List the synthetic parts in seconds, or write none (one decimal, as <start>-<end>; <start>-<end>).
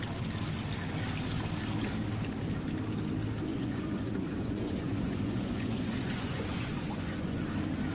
3.5-7.4